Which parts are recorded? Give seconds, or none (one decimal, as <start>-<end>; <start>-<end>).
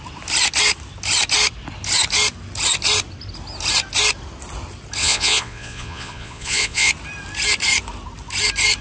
0.0-5.0; 6.9-8.8